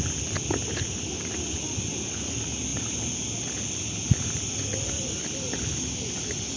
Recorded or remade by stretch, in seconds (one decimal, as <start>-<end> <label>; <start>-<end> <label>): 0.0-6.6 recorded

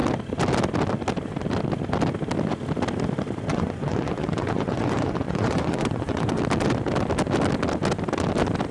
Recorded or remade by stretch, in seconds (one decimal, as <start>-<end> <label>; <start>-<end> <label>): 0.0-3.5 recorded; 3.5-6.4 remade; 6.4-8.7 recorded